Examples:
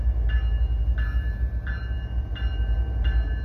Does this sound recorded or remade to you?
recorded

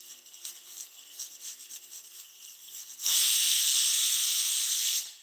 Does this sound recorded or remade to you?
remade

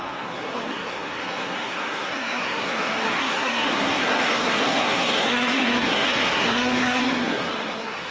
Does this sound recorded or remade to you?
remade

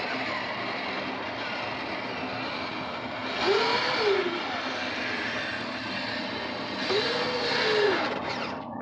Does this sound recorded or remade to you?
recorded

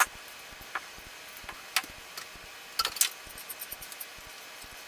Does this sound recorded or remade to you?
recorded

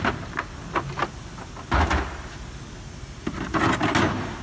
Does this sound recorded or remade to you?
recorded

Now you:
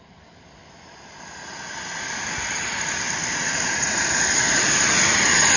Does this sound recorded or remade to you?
recorded